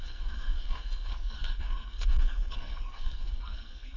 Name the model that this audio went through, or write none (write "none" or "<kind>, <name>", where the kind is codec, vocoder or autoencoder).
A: codec, SNAC